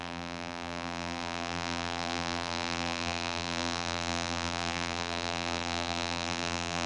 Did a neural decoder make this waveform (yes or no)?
yes